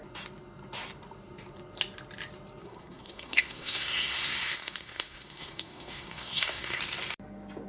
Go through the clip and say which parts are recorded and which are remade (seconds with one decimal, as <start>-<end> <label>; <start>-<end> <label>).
0.0-2.6 recorded; 2.6-6.8 remade; 6.8-7.7 recorded